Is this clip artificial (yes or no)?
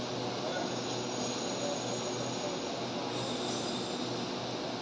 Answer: no